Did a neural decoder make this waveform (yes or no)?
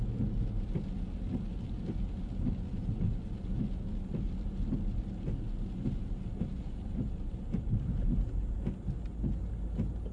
no